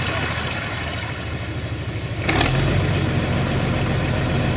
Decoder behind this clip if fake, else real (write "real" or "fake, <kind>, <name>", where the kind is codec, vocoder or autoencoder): real